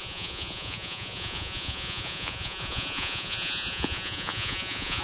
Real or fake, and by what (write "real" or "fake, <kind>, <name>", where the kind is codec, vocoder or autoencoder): fake, vocoder, Vocos